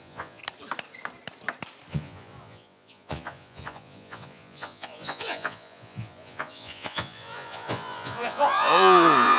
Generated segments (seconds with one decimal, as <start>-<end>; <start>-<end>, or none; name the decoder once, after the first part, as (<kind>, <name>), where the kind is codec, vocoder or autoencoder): 0.0-0.4 (vocoder, Vocos); 1.9-9.4